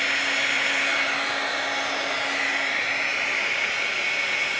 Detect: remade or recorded recorded